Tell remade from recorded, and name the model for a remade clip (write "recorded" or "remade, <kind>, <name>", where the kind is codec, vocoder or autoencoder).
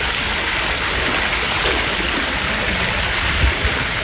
recorded